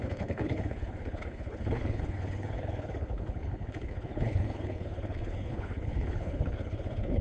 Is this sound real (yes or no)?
no